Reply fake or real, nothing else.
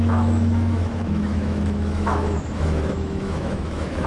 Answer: fake